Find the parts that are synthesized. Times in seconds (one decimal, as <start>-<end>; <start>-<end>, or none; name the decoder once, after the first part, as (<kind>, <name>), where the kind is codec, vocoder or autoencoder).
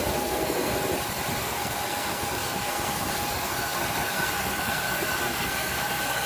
0.0-0.7 (codec, SNAC); 1.4-6.3